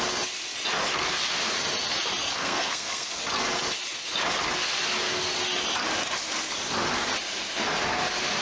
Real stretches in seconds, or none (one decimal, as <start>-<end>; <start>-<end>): 0.0-2.3; 3.2-8.4